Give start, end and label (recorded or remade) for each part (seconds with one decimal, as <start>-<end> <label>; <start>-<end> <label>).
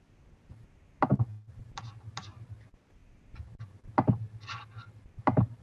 0.0-5.6 recorded